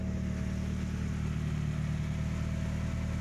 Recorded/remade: recorded